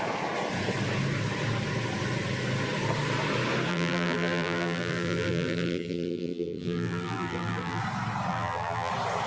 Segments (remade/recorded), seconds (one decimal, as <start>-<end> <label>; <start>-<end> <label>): 0.0-3.7 recorded; 3.7-7.8 remade; 7.8-8.3 recorded; 8.3-8.9 remade; 8.9-9.3 recorded